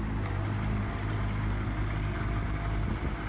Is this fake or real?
real